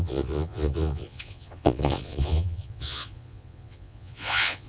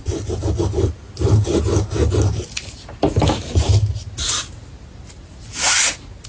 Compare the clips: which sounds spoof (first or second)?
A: first